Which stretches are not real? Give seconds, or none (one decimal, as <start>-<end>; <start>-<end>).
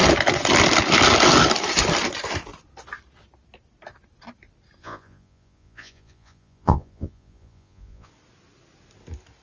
4.8-8.1